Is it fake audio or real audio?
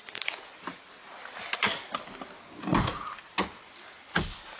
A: real